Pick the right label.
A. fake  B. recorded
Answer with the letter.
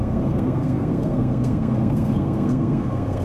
A